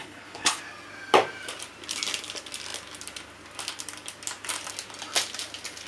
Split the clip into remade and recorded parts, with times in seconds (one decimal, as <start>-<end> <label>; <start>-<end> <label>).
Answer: 0.0-0.6 remade; 0.6-5.9 recorded